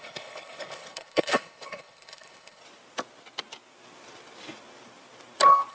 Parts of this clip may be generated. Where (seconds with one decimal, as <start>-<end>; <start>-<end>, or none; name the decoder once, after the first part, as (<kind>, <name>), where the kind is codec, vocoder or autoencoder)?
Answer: 0.0-2.6 (codec, HILCodec)